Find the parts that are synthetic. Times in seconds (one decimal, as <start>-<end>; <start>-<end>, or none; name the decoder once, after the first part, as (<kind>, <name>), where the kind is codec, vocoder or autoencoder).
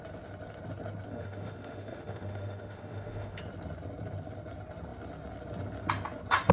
1.1-3.4 (autoencoder, DAC-VAE)